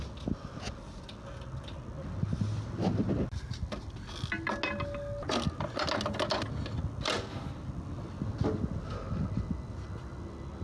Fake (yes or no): no